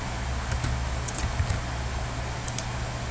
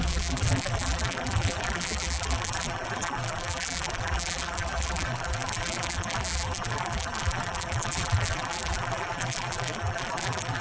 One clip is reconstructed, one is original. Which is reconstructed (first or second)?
second